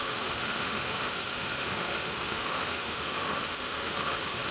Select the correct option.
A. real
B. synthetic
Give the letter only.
B